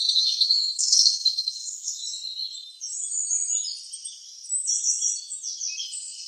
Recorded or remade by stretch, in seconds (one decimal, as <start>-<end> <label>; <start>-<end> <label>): 0.0-2.0 remade; 2.0-5.8 recorded; 5.8-6.3 remade